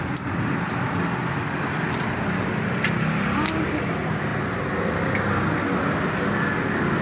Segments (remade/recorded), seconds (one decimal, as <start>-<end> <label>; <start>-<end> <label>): 0.0-7.0 recorded

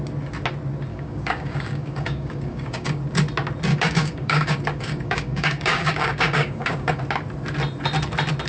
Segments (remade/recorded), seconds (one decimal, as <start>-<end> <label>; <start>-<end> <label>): 0.0-0.9 recorded; 0.9-3.0 remade; 3.0-3.7 recorded; 3.7-7.0 remade; 7.0-8.5 recorded

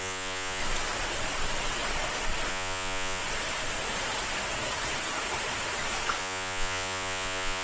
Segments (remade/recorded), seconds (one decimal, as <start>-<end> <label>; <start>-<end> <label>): 0.0-0.6 remade; 0.6-2.5 recorded; 2.5-3.2 remade; 3.2-6.2 recorded; 6.2-7.6 remade

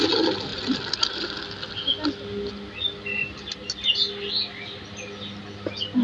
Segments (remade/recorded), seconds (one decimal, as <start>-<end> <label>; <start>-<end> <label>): 0.0-6.0 recorded

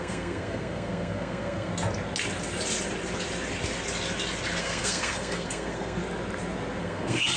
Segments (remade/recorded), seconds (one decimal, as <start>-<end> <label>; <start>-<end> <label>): 0.0-1.7 remade; 1.7-4.6 recorded; 4.6-6.0 remade; 6.0-6.8 recorded; 6.8-7.4 remade

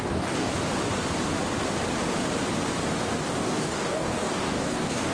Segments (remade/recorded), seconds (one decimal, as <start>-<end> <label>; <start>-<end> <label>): 0.0-0.5 remade; 0.5-3.3 recorded; 3.3-5.1 remade

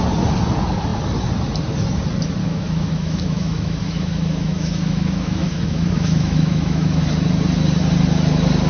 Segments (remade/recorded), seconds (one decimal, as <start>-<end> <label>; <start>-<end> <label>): 0.0-2.4 recorded; 2.4-7.0 remade; 7.0-8.7 recorded

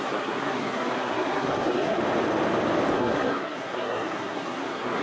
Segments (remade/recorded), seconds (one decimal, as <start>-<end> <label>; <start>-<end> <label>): 0.0-2.0 remade; 2.0-2.9 recorded; 2.9-5.0 remade